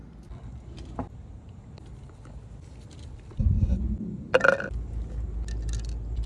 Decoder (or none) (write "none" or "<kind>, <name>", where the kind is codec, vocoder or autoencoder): none